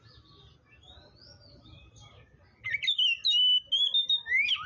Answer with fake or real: real